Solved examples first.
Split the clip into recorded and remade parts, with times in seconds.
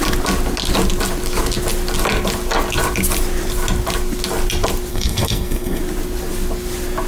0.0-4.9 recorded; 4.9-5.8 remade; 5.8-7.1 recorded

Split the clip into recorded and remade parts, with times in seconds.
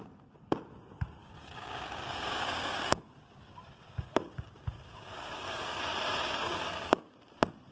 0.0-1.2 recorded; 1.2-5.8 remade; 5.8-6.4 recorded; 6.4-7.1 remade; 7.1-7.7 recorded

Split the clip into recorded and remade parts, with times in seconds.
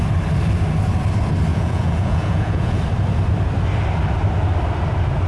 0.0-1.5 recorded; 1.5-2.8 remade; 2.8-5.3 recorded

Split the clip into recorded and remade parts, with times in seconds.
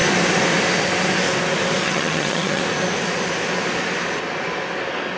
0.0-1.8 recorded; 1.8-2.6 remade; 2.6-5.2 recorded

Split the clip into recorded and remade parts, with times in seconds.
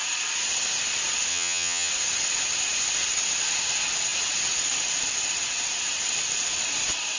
0.0-1.3 recorded; 1.3-1.9 remade; 1.9-7.2 recorded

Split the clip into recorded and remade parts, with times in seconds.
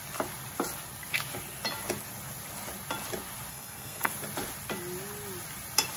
0.0-3.5 recorded; 3.5-4.1 remade; 4.1-6.0 recorded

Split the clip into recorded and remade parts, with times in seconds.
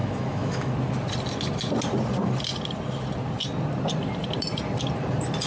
0.0-0.7 remade; 0.7-5.5 recorded